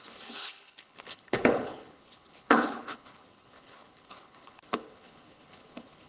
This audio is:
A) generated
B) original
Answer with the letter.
A